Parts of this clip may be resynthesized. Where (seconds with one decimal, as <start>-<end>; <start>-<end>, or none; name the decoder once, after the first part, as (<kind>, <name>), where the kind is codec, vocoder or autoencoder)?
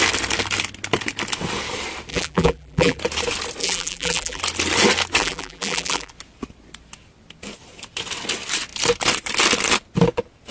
2.1-3.0 (vocoder, BigVGAN v2); 3.6-4.4; 5.2-6.1